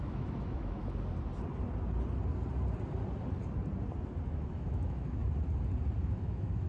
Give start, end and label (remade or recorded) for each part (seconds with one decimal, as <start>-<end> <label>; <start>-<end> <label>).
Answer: 0.0-0.8 remade; 0.8-4.3 recorded; 4.3-5.2 remade; 5.2-6.0 recorded; 6.0-6.7 remade